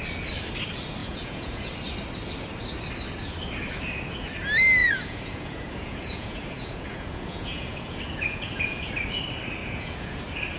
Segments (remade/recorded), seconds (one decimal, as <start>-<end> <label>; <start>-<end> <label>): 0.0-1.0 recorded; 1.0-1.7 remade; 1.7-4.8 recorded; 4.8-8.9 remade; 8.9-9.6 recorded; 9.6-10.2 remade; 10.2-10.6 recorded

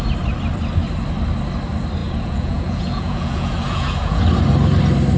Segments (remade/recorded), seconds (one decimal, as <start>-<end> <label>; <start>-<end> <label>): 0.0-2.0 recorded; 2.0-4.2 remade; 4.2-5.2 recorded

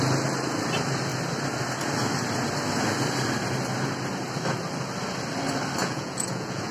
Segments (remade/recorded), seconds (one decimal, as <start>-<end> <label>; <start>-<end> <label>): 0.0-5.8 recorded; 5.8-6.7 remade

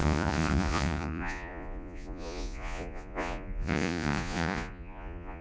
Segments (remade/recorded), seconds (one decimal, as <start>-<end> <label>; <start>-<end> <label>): 0.0-5.4 remade

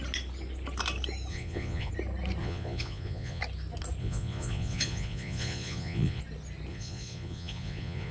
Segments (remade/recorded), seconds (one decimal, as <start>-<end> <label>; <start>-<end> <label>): 0.0-1.3 recorded; 1.3-1.9 remade; 1.9-2.4 recorded; 2.4-3.4 remade; 3.4-4.0 recorded; 4.0-6.2 remade; 6.2-6.7 recorded; 6.7-8.1 remade